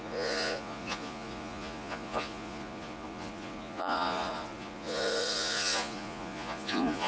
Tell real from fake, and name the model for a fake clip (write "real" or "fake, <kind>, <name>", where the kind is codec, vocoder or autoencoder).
fake, vocoder, Vocos